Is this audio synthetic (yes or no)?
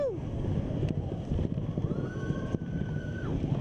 no